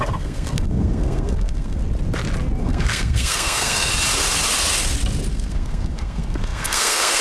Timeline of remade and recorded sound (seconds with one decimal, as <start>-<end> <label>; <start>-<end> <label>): 0.0-1.8 remade; 1.8-2.6 recorded; 2.6-3.9 remade; 3.9-5.3 recorded; 5.3-7.2 remade